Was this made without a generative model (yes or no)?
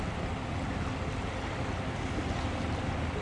yes